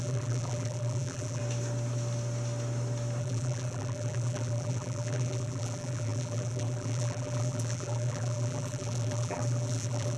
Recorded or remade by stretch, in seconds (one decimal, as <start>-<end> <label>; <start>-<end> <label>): 0.0-1.4 remade; 1.4-3.2 recorded; 3.2-10.2 remade